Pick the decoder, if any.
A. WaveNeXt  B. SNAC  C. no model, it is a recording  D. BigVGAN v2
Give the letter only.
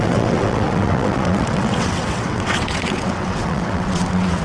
A